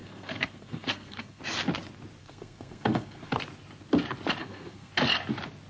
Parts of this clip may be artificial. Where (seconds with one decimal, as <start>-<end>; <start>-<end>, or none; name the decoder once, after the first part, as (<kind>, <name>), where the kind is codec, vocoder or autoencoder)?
0.0-1.4 (codec, SNAC); 2.2-3.3; 4.4-4.9